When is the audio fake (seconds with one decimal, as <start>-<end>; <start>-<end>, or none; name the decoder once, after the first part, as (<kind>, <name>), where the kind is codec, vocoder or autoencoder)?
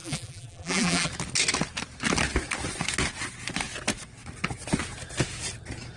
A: 0.0-1.1 (vocoder, BigVGAN v2)